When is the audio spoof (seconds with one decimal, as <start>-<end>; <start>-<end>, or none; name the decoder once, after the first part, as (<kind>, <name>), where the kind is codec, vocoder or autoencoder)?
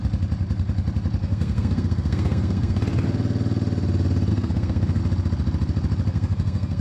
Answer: 1.2-2.8 (codec, SNAC); 4.3-5.0; 6.1-6.8